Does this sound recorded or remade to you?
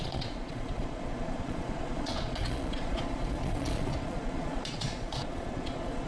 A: remade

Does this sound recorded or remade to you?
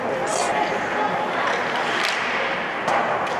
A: recorded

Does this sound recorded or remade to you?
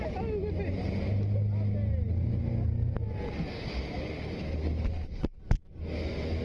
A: recorded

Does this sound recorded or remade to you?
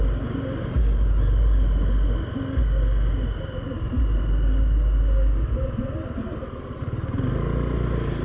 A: recorded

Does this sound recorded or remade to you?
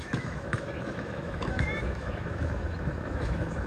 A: remade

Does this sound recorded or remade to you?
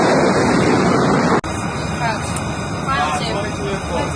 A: recorded